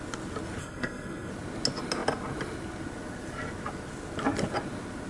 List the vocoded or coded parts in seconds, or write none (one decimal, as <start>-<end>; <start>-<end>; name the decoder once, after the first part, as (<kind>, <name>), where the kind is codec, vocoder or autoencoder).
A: 0.6-1.3 (codec, SNAC)